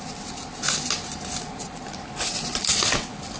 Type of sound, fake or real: real